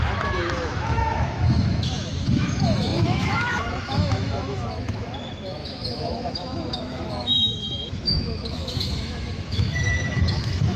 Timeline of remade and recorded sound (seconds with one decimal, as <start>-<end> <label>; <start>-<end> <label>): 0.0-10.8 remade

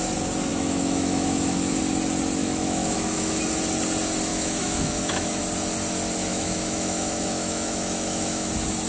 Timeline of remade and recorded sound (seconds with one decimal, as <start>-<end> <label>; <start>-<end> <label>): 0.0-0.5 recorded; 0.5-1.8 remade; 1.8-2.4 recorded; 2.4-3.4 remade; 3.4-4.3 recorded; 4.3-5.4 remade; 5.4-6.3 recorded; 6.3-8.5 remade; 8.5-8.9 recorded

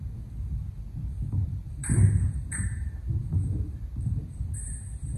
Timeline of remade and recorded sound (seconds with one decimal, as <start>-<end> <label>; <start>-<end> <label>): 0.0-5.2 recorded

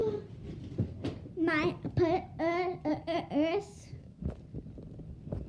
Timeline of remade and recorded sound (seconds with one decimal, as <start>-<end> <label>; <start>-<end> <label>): 0.0-3.6 recorded; 3.6-4.2 remade; 4.2-5.5 recorded

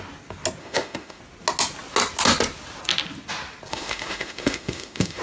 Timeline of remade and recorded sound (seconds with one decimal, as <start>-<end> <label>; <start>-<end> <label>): 0.0-0.6 recorded; 0.6-1.2 remade; 1.2-3.7 recorded; 3.7-5.2 remade

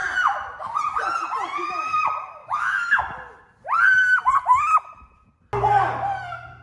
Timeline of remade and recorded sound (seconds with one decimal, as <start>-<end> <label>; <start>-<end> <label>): 0.0-2.4 recorded; 2.4-3.0 remade; 3.0-6.6 recorded

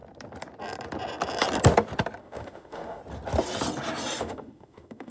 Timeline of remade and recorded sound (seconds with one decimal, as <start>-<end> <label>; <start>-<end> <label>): 0.0-2.2 recorded; 2.2-3.0 remade; 3.0-4.2 recorded; 4.2-5.1 remade

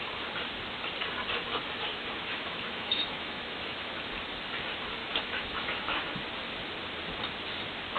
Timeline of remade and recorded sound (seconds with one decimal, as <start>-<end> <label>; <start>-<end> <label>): 0.0-1.9 recorded; 1.9-3.9 remade; 3.9-5.0 recorded; 5.0-6.2 remade; 6.2-8.0 recorded